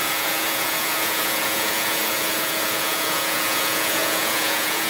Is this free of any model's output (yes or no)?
no